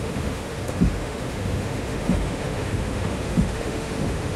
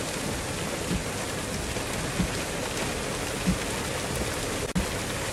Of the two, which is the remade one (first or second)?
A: first